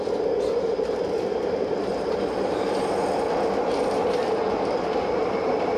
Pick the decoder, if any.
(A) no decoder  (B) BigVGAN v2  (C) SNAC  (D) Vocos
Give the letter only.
A